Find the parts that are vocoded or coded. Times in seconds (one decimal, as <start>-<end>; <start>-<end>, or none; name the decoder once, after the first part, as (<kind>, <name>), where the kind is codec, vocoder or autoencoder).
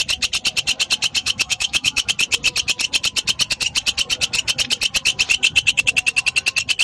1.2-2.1 (autoencoder, DAC-VAE)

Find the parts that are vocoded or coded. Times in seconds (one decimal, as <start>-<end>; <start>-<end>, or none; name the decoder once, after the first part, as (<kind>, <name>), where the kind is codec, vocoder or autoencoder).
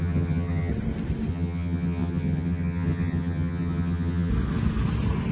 0.0-0.7 (vocoder, HiFi-GAN); 1.3-4.3